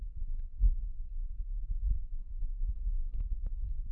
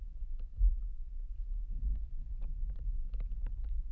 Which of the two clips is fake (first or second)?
first